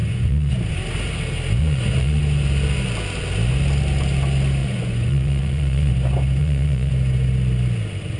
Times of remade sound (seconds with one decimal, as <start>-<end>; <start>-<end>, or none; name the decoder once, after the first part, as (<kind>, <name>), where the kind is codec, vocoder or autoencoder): 0.0-0.5 (vocoder, Vocos); 1.6-2.2; 4.6-5.9; 6.4-6.9